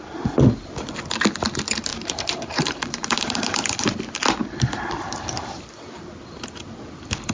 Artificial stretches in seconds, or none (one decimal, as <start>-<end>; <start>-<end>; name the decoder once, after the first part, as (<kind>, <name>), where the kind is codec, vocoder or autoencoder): 1.9-3.6 (vocoder, BigVGAN v2); 4.4-6.1